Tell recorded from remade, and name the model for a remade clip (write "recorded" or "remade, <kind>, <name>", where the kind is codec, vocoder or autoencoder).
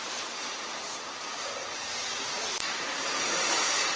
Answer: remade, vocoder, BigVGAN v2